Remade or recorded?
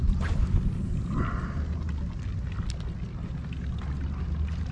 recorded